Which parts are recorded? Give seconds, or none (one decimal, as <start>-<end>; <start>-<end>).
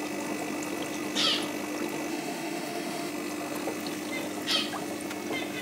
0.0-2.1; 3.1-5.6